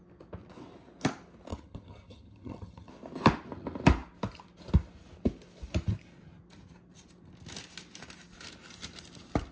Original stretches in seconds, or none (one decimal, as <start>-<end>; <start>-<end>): 0.0-1.5; 2.9-9.5